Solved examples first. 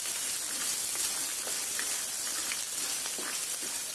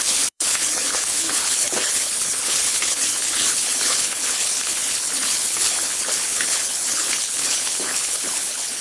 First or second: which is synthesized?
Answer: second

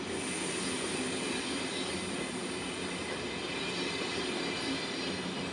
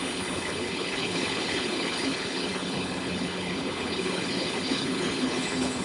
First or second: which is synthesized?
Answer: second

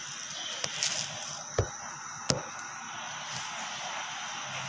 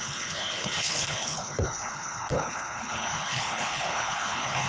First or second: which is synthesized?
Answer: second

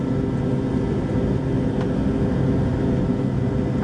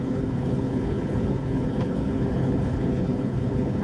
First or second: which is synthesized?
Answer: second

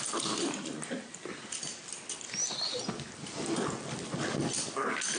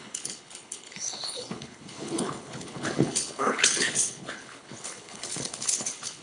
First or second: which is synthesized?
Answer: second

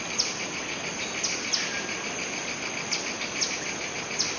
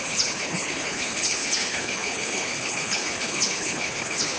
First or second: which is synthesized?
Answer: second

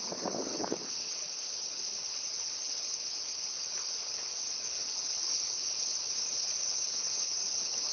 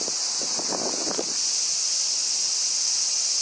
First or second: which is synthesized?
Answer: first